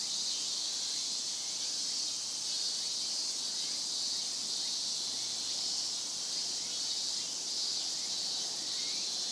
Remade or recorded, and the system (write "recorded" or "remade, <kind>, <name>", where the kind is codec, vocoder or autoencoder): remade, vocoder, BigVGAN v2